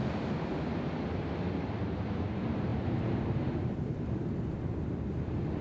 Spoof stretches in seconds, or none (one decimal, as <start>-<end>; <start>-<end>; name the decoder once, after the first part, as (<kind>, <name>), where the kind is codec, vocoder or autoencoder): 2.7-4.5 (vocoder, BigVGAN v2)

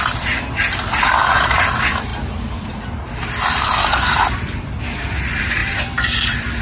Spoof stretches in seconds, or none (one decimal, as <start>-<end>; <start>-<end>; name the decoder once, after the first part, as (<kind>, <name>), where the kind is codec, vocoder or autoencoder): 5.6-6.6 (vocoder, BigVGAN v2)

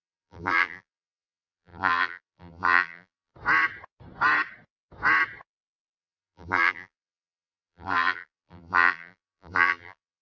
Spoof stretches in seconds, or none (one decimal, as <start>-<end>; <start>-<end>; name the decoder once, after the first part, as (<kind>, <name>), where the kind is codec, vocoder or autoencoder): 0.0-3.3 (vocoder, BigVGAN v2); 6.0-10.2